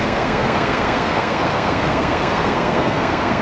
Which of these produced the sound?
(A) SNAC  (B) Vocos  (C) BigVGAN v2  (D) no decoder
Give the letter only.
A